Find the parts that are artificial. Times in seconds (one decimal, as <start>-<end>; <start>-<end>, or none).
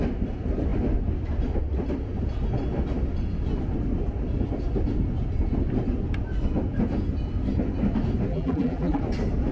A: 8.3-9.0